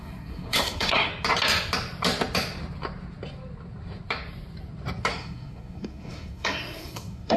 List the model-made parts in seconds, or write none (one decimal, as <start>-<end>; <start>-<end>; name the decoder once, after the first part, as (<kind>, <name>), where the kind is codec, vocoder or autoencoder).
0.0-1.1 (codec, SNAC); 5.1-7.4

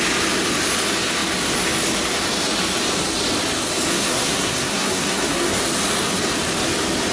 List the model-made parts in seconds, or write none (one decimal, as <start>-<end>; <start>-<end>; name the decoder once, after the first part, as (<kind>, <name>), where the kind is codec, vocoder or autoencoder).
3.9-5.5 (codec, SNAC)

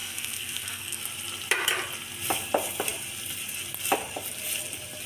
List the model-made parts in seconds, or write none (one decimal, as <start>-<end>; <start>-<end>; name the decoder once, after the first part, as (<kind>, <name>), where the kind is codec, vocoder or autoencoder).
0.0-1.0 (codec, SNAC)

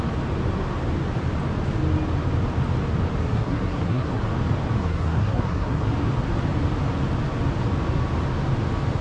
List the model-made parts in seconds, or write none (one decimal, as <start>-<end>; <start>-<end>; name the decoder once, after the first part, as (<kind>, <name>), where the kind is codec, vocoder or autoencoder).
3.2-4.2 (codec, SNAC); 4.8-5.9